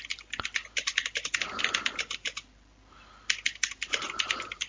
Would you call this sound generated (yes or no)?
no